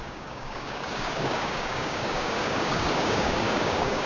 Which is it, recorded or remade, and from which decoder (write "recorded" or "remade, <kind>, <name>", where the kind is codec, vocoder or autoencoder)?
remade, codec, DAC